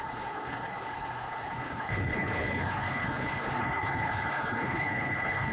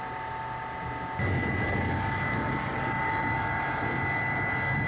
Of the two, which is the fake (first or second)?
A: first